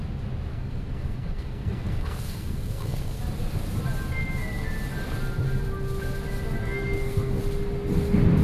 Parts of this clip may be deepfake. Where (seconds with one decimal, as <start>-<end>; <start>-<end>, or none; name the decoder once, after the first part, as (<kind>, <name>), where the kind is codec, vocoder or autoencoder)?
0.5-3.2 (codec, SNAC); 6.6-7.4